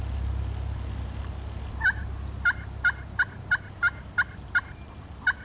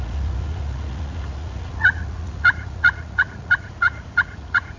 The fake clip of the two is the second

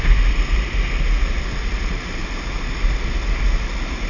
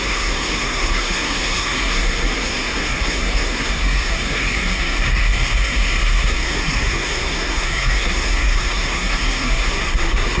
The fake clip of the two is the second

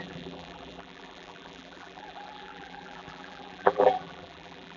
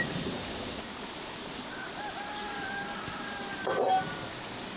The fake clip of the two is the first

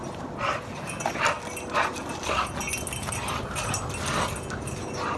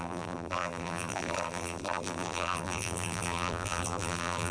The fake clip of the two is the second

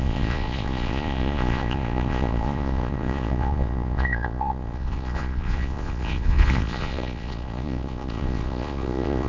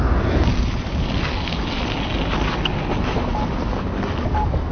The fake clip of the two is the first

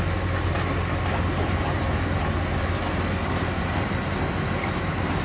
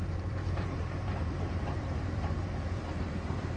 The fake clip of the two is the second